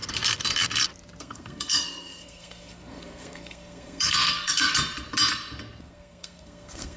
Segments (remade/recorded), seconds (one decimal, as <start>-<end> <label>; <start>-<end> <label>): 0.0-1.2 recorded; 1.2-4.7 remade; 4.7-5.8 recorded; 5.8-7.0 remade